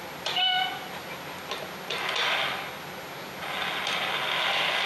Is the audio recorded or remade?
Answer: recorded